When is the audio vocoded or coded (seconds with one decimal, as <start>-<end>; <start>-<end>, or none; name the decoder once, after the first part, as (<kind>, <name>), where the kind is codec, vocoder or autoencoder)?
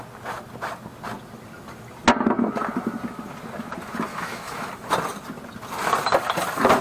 4.1-4.7 (autoencoder, DAC-VAE)